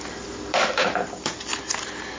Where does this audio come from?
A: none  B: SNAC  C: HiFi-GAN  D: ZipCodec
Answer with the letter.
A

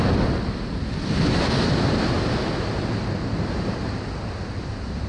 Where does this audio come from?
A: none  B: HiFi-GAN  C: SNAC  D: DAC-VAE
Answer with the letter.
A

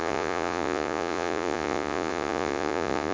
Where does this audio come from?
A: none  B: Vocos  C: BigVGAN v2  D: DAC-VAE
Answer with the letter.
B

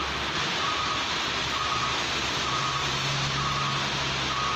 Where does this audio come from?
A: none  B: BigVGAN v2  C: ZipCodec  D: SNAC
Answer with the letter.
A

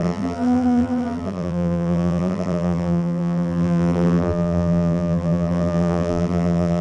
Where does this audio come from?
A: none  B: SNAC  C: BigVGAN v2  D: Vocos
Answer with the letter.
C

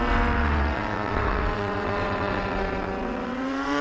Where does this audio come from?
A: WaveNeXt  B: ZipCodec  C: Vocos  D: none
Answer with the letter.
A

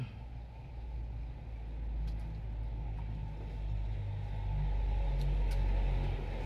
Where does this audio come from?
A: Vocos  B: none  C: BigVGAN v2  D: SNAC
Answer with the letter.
B